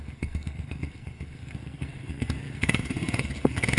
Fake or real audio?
fake